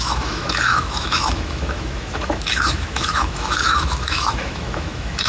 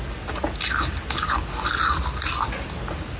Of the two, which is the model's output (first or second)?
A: first